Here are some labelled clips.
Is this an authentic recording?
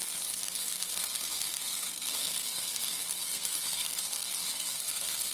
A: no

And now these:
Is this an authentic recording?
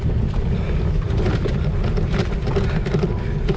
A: yes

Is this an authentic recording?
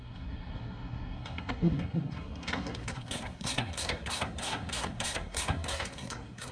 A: no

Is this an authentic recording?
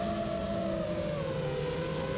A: yes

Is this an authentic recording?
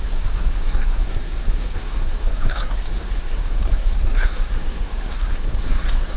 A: no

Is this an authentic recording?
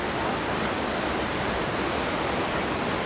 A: yes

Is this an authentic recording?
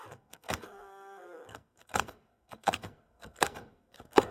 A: no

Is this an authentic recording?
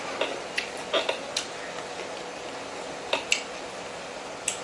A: yes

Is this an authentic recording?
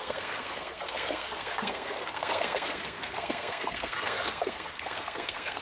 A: no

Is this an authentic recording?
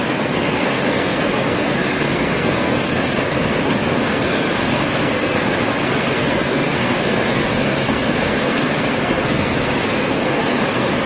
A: no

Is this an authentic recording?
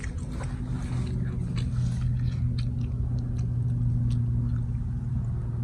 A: yes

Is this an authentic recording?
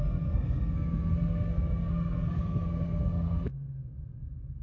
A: no